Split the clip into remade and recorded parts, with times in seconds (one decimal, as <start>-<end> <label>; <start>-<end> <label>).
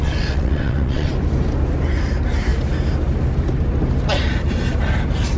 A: 0.0-1.1 remade; 1.1-5.4 recorded